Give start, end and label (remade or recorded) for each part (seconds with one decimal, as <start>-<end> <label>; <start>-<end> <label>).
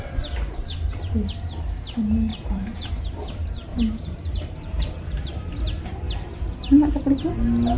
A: 0.0-2.3 recorded; 2.3-2.9 remade; 2.9-3.7 recorded; 3.7-5.8 remade; 5.8-7.8 recorded